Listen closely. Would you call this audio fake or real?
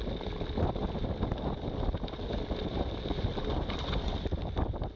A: real